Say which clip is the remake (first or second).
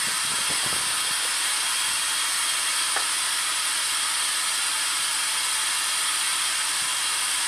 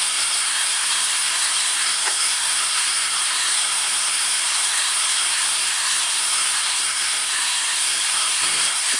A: second